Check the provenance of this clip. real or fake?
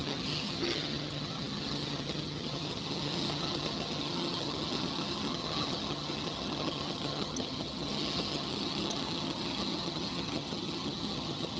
fake